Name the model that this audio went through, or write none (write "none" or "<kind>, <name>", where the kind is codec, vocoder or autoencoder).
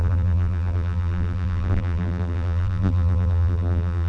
vocoder, BigVGAN v2